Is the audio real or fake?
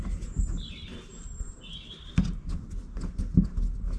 real